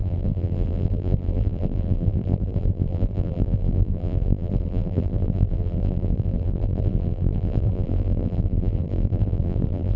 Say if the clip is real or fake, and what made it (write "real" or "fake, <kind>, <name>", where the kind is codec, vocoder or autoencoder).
fake, vocoder, BigVGAN v2